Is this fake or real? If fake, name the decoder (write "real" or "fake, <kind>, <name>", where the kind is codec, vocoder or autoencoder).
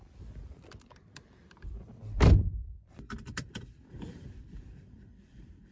fake, vocoder, BigVGAN v2